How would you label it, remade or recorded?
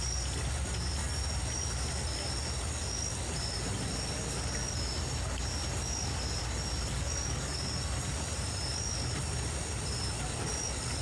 recorded